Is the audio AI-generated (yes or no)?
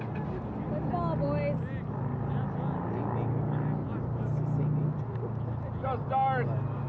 no